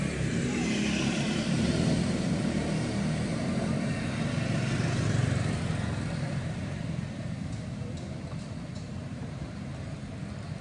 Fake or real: fake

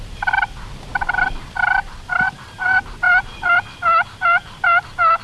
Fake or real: real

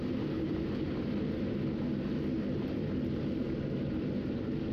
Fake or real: real